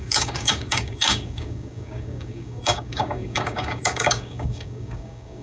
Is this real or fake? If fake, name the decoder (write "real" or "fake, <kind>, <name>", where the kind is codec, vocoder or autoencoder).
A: fake, codec, DAC